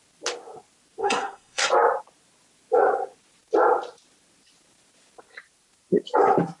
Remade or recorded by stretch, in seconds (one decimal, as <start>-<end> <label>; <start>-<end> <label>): 0.0-1.0 recorded; 1.0-1.7 remade; 1.7-6.6 recorded